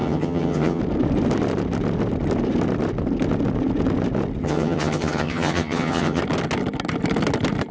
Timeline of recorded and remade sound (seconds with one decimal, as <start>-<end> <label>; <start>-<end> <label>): 0.0-0.8 remade; 0.8-4.4 recorded; 4.4-6.2 remade; 6.2-7.7 recorded